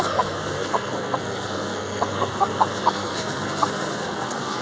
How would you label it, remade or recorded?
remade